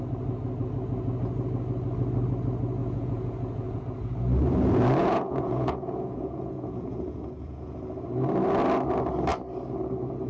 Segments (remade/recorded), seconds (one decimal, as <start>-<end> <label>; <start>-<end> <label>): 0.0-2.8 recorded; 2.8-3.8 remade; 3.8-5.0 recorded; 5.0-7.8 remade; 7.8-10.3 recorded